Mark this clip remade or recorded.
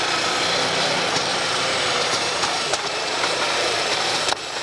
remade